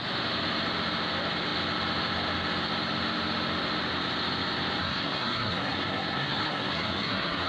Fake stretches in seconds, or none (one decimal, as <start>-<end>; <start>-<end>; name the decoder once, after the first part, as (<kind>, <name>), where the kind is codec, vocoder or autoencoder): 4.8-7.5 (codec, SNAC)